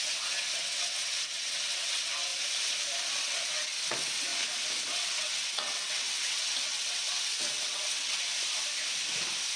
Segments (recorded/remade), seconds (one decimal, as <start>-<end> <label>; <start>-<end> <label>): 0.0-2.3 remade; 2.3-3.2 recorded; 3.2-4.3 remade; 4.3-4.9 recorded; 4.9-8.3 remade; 8.3-9.6 recorded